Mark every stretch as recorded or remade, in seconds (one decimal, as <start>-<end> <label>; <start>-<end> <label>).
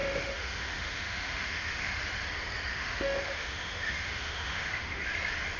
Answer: 0.0-2.0 remade; 2.0-2.7 recorded; 2.7-5.0 remade; 5.0-5.6 recorded